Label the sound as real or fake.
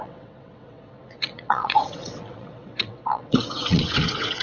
fake